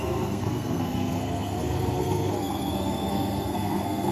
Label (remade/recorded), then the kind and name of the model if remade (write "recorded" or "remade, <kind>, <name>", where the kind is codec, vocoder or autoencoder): remade, codec, SNAC